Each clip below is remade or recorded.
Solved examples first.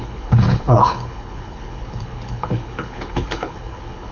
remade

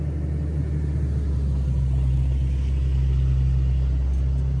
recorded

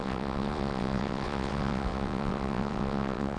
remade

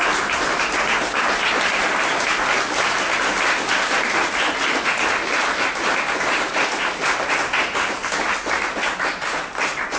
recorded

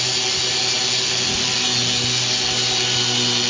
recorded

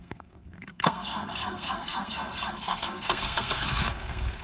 remade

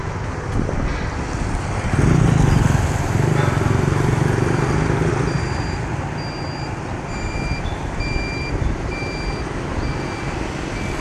recorded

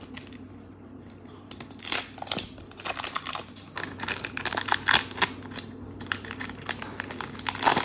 recorded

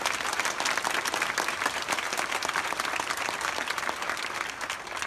recorded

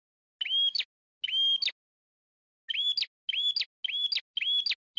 recorded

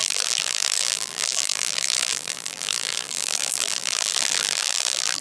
remade